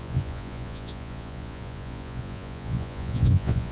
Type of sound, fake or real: fake